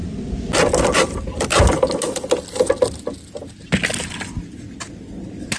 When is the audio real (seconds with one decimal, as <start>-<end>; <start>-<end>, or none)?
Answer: 0.0-5.6